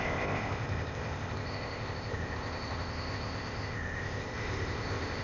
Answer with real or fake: fake